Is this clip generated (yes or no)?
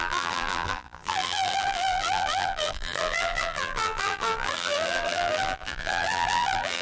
yes